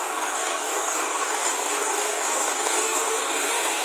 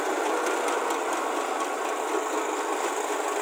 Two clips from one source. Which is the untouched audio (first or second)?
second